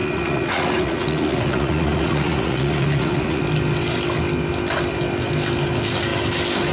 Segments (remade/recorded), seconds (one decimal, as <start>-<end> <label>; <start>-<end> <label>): 0.0-3.4 remade; 3.4-6.7 recorded